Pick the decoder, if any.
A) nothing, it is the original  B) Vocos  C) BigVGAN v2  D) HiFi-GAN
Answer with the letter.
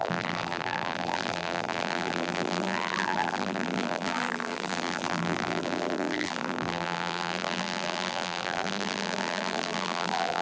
C